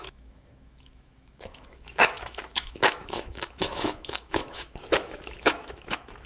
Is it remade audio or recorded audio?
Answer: remade